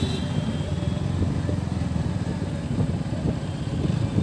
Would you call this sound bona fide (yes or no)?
yes